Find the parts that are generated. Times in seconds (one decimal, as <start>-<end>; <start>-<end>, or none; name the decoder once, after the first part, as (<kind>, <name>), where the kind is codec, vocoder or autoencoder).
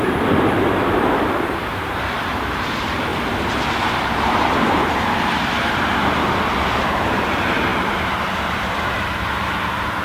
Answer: 0.0-3.1 (vocoder, BigVGAN v2); 3.8-6.2; 6.8-10.0